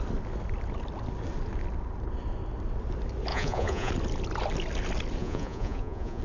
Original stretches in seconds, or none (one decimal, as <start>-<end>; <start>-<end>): 0.0-3.3; 3.9-5.2